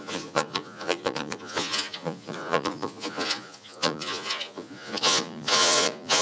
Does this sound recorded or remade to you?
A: remade